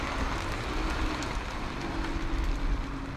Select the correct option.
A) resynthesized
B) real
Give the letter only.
B